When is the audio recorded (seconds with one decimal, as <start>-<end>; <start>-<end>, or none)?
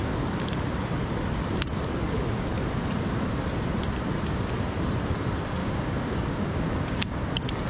0.0-5.6; 7.3-7.7